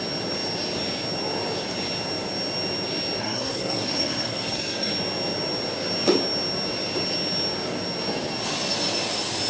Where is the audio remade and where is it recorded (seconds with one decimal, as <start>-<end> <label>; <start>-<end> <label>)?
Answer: 0.0-3.2 recorded; 3.2-4.9 remade; 4.9-9.5 recorded